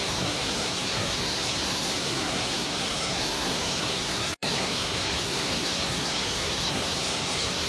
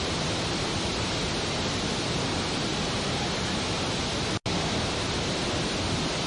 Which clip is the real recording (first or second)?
second